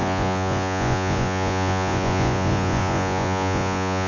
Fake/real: fake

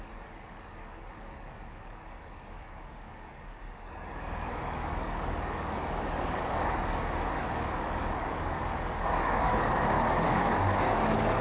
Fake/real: fake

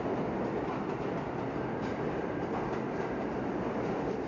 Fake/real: real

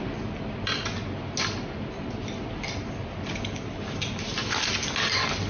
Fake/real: real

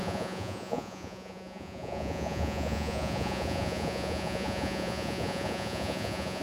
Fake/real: fake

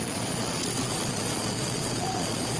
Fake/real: fake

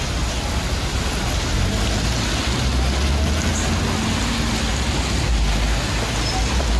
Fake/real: real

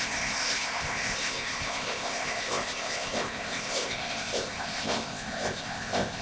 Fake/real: fake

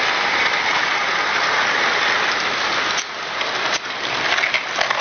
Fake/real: real